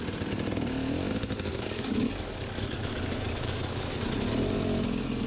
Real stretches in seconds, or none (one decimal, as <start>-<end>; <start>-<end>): 0.0-1.5; 4.0-5.3